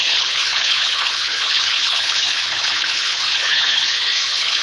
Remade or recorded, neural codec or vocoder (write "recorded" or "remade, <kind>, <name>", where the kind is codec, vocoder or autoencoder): remade, codec, HILCodec